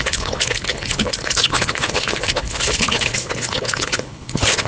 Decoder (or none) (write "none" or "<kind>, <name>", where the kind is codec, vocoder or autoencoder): codec, HILCodec